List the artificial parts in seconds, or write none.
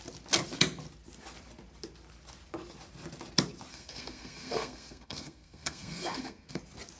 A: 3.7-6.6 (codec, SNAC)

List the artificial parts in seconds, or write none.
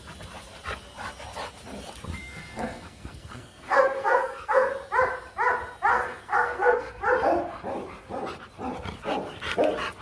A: 2.2-4.7 (codec, SNAC); 5.9-7.0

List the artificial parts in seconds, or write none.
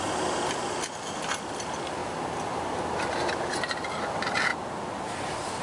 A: none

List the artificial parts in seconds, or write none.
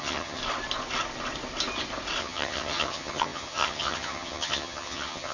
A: 0.0-0.4 (vocoder, HiFi-GAN); 2.2-5.3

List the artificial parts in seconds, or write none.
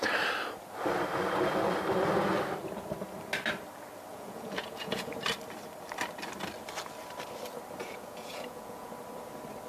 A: 4.1-5.1 (vocoder, Vocos); 7.8-8.9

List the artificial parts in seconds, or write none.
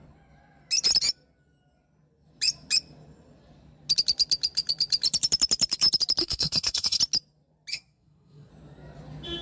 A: 6.2-7.0 (codec, SNAC); 7.7-8.5